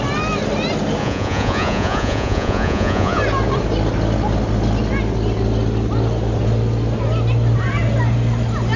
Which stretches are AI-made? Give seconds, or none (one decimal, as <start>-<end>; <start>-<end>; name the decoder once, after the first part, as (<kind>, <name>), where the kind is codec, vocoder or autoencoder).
1.0-3.2 (vocoder, Vocos)